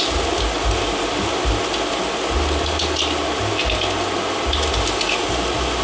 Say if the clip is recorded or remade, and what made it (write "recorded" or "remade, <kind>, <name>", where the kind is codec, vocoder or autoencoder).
recorded